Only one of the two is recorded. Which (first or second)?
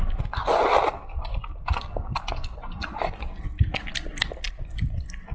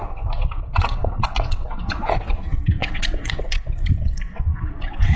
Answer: first